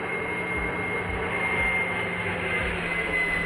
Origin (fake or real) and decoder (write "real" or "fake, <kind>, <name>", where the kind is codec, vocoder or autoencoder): real